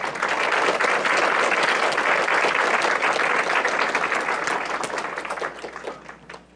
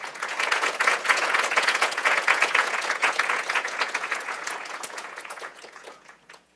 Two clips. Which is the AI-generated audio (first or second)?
second